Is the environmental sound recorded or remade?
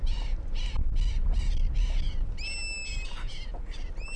recorded